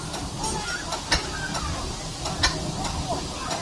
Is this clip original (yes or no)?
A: yes